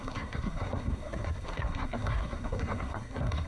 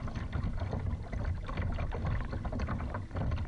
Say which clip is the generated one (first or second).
first